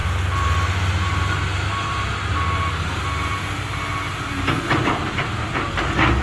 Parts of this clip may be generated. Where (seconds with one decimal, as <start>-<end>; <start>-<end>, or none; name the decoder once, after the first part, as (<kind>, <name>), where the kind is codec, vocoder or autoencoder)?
none